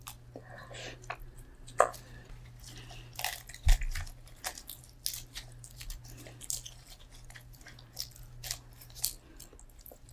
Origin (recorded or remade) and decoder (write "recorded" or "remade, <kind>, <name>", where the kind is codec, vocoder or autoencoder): recorded